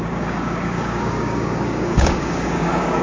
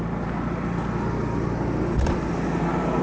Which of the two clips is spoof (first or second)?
first